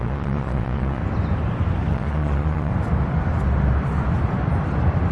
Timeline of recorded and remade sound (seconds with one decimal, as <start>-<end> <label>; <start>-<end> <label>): 0.0-1.0 remade; 1.0-1.9 recorded; 1.9-2.7 remade; 2.7-5.1 recorded